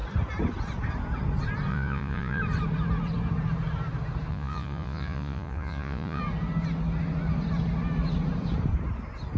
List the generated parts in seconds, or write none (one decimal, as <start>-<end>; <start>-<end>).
1.7-2.4; 4.3-6.2